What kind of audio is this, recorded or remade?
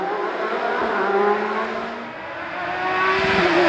recorded